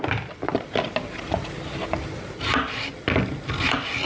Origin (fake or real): real